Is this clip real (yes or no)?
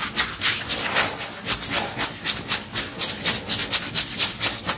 yes